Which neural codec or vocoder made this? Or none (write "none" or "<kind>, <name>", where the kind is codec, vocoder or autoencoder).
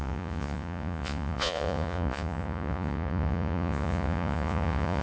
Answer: vocoder, Vocos